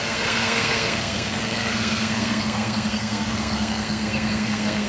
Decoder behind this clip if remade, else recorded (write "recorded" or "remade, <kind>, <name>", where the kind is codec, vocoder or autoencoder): remade, codec, SNAC